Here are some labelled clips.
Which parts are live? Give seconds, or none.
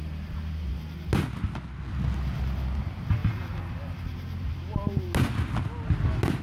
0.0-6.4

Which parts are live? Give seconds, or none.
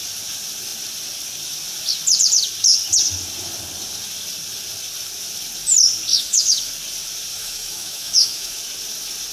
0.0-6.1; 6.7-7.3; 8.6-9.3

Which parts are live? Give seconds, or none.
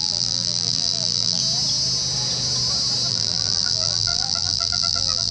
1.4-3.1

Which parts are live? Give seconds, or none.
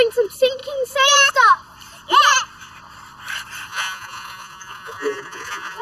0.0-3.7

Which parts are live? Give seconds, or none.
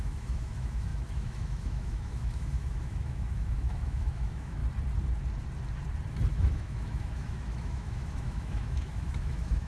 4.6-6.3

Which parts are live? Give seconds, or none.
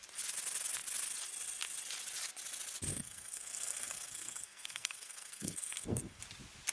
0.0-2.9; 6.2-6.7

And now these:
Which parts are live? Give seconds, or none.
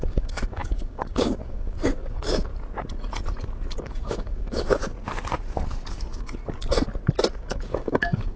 2.5-3.8; 4.8-5.9; 6.4-7.3